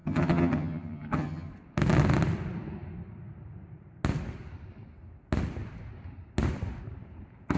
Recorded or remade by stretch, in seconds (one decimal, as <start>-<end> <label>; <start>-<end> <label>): 0.0-1.5 remade; 1.5-7.6 recorded